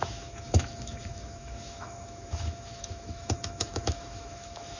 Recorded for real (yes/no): no